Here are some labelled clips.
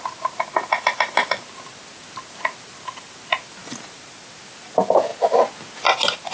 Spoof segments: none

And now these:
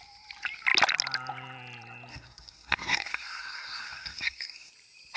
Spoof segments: 2.1-4.7 (codec, SNAC)

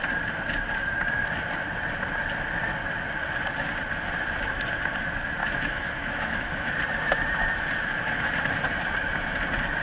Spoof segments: 5.4-6.7 (autoencoder, DAC-VAE)